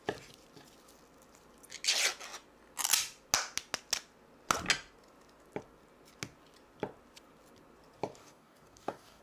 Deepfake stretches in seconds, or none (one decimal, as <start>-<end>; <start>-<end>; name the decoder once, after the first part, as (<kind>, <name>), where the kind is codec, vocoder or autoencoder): 8.2-9.2 (codec, DAC)